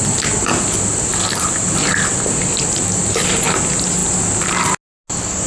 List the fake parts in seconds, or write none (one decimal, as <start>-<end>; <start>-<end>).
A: none